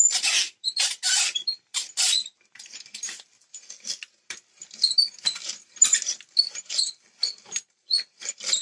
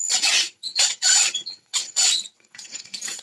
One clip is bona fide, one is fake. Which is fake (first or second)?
second